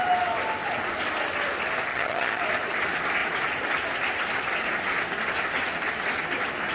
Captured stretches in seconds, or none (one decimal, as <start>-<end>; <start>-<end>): 0.0-1.9; 2.4-6.7